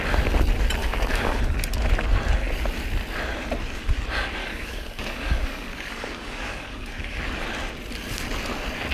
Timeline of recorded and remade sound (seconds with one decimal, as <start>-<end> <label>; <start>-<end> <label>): 0.0-0.8 recorded; 0.8-1.4 remade; 1.4-4.4 recorded; 4.4-7.2 remade; 7.2-8.9 recorded